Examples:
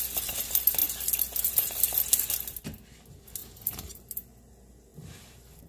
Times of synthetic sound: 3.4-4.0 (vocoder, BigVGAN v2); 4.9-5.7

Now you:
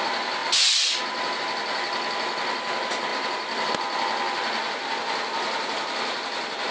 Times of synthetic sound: 3.1-3.7 (vocoder, BigVGAN v2)

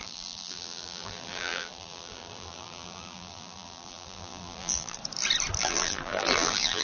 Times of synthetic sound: 0.0-5.0 (vocoder, BigVGAN v2); 5.6-6.8